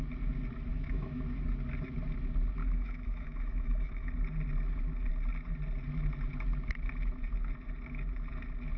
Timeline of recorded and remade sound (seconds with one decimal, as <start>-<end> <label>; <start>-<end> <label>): 0.0-0.7 recorded; 0.7-1.2 remade; 1.2-2.6 recorded; 2.6-4.1 remade; 4.1-8.8 recorded